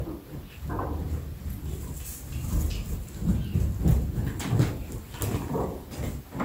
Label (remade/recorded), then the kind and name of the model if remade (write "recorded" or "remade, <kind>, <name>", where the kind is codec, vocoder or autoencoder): recorded